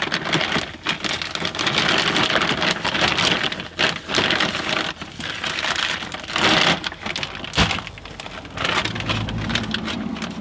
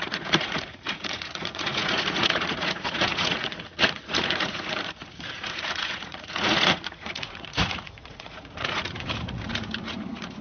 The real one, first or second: first